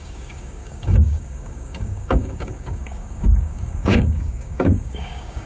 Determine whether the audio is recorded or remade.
remade